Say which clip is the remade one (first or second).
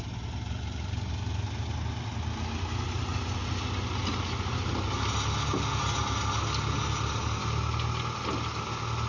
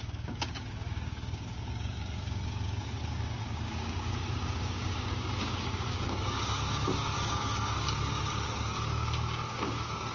second